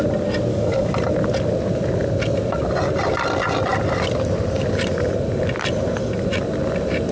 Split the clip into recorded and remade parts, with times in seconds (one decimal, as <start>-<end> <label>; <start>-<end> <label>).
0.0-0.5 recorded; 0.5-1.0 remade; 1.0-7.1 recorded